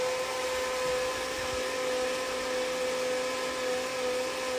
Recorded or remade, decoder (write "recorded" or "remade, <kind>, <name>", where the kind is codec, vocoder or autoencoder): recorded